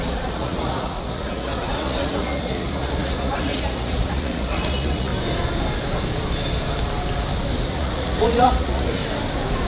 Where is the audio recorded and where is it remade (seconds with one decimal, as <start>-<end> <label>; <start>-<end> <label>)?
0.0-5.1 remade; 5.1-7.7 recorded; 7.7-9.0 remade; 9.0-9.7 recorded